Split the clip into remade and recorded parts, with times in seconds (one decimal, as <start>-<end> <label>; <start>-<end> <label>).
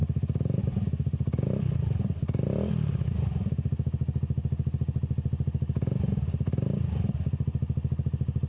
0.0-8.5 recorded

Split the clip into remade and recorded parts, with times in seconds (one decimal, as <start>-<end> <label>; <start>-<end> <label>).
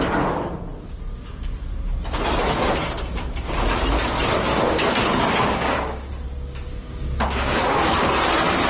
0.0-4.5 recorded; 4.5-6.1 remade; 6.1-6.7 recorded; 6.7-7.9 remade; 7.9-8.7 recorded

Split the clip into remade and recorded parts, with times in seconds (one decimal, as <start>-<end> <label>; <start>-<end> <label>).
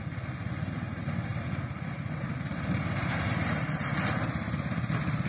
0.0-5.3 recorded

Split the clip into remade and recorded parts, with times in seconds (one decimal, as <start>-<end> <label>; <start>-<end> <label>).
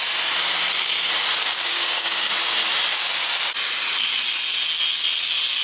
0.0-1.4 recorded; 1.4-2.3 remade; 2.3-5.6 recorded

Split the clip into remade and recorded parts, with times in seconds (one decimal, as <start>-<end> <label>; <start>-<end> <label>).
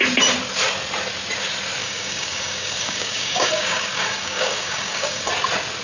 0.0-1.8 recorded; 1.8-5.3 remade; 5.3-5.8 recorded